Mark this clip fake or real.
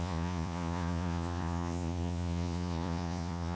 fake